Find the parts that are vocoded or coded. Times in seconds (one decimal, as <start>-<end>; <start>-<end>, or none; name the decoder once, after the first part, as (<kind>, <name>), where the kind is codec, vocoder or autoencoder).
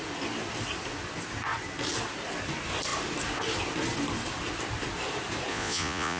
5.5-6.2 (vocoder, Vocos)